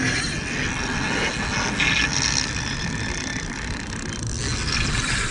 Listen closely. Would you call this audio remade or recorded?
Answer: recorded